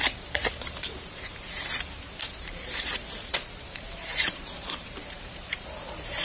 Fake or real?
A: fake